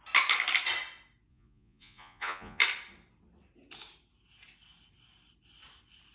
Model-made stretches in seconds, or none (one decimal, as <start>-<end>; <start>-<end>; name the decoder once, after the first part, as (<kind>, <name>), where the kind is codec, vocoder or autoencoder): 1.3-2.6 (vocoder, Vocos)